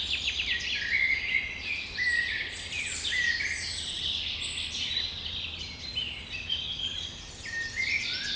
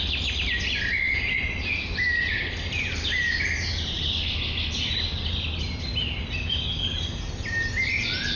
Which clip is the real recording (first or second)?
second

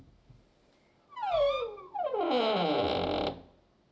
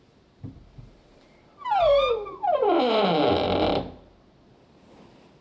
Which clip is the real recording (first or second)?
first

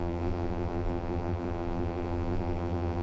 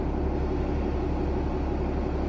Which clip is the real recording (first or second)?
second